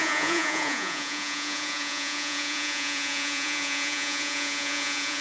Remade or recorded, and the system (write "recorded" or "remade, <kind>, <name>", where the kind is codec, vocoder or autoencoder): remade, vocoder, Vocos